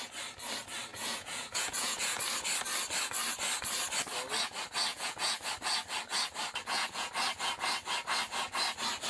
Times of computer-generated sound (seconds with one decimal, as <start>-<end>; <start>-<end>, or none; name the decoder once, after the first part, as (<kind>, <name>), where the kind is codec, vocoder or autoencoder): 0.9-2.2 (vocoder, Vocos); 4.9-5.5; 6.6-7.1